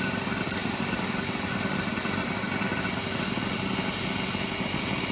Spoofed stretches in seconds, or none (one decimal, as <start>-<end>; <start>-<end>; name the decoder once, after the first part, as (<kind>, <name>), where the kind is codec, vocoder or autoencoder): none